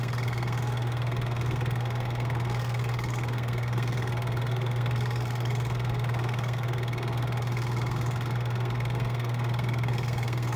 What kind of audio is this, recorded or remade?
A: remade